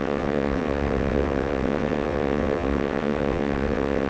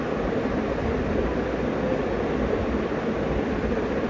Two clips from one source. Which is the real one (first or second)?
second